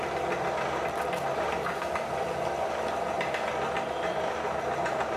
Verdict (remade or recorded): recorded